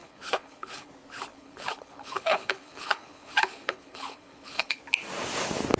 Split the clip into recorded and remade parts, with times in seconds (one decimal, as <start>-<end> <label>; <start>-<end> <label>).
0.0-0.9 remade; 0.9-1.3 recorded; 1.3-4.8 remade; 4.8-5.8 recorded